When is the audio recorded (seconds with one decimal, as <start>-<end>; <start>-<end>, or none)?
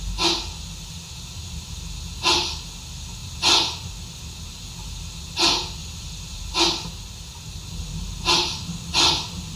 0.0-5.8; 6.4-9.6